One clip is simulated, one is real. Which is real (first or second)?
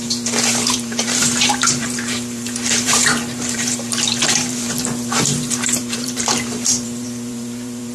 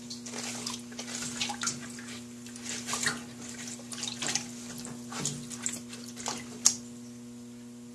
second